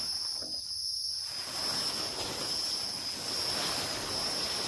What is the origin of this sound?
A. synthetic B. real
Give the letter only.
B